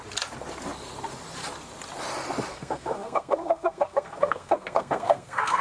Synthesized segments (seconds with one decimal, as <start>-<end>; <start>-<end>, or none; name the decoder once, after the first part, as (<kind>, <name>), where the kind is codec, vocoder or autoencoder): 2.5-5.6 (codec, SNAC)